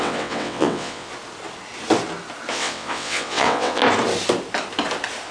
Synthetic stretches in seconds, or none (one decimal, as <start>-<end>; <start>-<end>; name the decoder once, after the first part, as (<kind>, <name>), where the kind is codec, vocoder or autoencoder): 0.0-1.1 (vocoder, WaveNeXt); 2.5-3.8